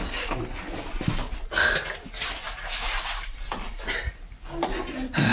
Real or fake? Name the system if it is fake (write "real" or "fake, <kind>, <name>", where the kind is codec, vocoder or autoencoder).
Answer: real